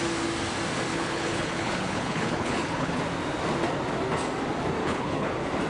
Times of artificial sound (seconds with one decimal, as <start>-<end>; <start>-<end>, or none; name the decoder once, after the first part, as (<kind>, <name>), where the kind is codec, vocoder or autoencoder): 0.9-3.0 (codec, HILCodec); 4.8-5.3